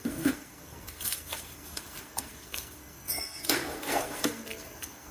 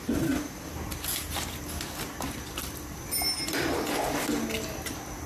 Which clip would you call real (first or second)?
second